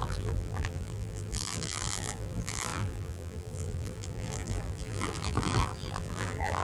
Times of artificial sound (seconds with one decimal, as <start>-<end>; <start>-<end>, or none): 0.0-6.6